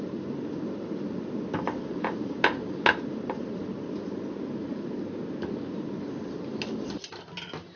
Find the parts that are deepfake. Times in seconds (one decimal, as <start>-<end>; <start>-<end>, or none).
none